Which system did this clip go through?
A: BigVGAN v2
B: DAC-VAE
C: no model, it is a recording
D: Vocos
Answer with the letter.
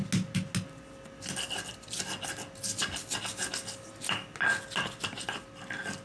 C